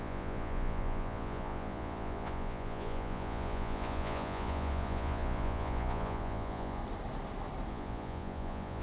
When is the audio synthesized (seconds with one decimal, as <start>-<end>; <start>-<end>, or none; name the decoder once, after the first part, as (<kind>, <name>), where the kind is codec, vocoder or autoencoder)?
0.0-6.8 (vocoder, Vocos); 7.7-8.8